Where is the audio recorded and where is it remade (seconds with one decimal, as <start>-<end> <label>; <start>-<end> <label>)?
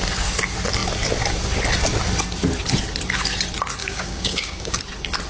0.0-3.8 recorded; 3.8-4.8 remade; 4.8-5.3 recorded